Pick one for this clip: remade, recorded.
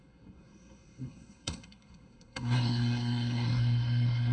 remade